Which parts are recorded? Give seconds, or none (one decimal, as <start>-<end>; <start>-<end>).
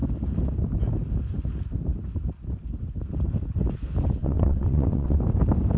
0.0-4.2; 5.2-5.8